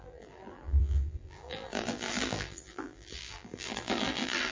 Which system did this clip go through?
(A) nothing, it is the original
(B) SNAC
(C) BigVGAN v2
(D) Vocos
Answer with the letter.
C